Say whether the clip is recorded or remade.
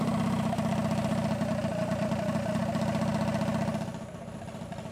recorded